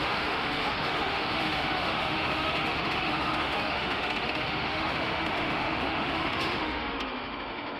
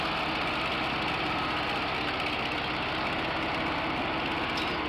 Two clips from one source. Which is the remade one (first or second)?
first